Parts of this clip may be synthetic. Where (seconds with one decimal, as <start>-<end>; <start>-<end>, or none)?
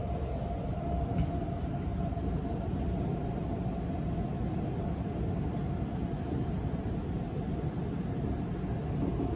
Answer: none